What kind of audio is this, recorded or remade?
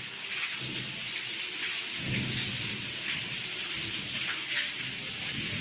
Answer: recorded